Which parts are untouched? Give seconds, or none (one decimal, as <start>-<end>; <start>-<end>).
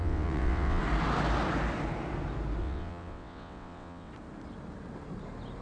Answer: 0.8-2.6; 4.1-5.6